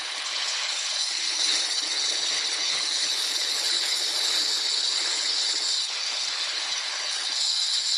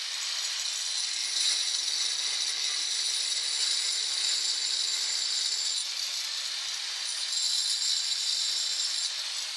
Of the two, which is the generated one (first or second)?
first